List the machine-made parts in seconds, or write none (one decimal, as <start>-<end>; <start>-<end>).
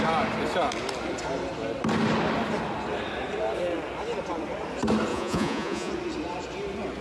5.1-5.9